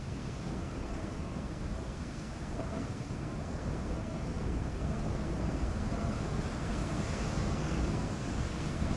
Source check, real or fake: fake